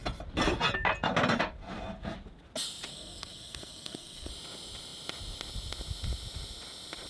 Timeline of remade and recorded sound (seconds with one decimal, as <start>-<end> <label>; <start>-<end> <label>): 0.0-2.9 recorded; 2.9-4.3 remade; 4.3-7.1 recorded